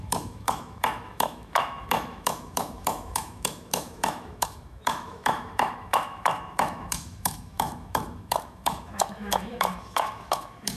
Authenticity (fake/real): fake